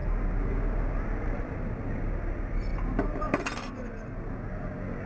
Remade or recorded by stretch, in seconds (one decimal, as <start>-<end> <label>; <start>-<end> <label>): 0.0-2.7 recorded; 2.7-3.4 remade; 3.4-5.1 recorded